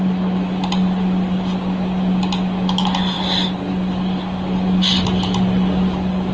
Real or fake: real